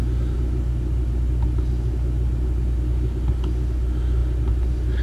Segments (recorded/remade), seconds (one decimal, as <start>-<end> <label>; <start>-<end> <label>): 0.0-5.0 recorded